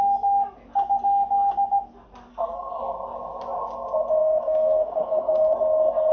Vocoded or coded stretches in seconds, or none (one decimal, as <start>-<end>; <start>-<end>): 2.3-2.8; 4.2-5.5

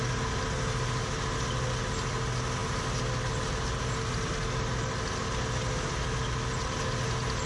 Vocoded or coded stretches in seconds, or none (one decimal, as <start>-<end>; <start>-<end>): none

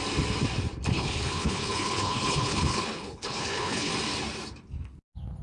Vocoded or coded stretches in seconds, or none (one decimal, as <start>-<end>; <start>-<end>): 0.9-3.9

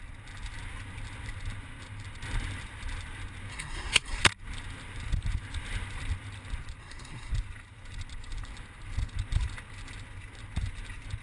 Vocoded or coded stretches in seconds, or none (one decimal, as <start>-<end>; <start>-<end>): 3.5-4.2; 6.8-7.3